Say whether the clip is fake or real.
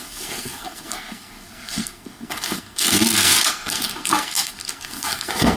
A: fake